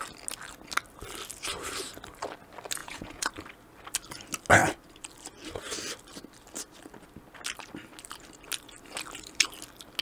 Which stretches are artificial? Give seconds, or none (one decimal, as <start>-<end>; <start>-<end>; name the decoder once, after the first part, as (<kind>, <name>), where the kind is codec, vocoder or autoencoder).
2.8-3.3 (vocoder, Vocos)